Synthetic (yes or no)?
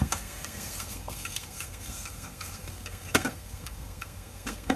yes